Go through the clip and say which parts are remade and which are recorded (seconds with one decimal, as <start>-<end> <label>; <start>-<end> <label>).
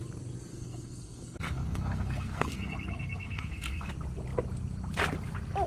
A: 0.0-0.5 recorded; 0.5-3.9 remade; 3.9-5.7 recorded